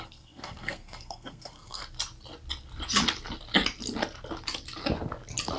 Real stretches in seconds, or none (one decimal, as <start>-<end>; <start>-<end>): 1.8-5.6